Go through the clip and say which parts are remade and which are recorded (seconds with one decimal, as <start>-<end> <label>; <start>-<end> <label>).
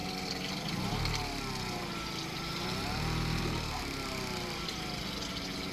0.0-5.7 recorded